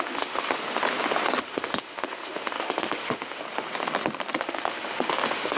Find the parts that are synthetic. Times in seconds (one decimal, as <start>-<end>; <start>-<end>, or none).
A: 0.0-0.6; 1.4-3.4; 4.4-5.6